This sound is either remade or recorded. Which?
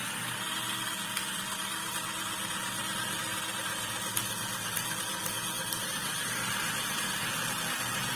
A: recorded